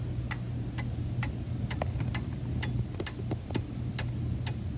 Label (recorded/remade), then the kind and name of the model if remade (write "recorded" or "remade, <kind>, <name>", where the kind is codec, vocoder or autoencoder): recorded